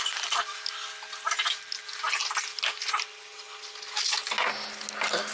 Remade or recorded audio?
recorded